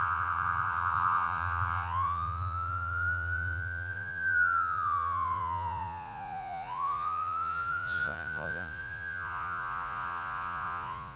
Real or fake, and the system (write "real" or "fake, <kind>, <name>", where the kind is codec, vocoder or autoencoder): fake, vocoder, Vocos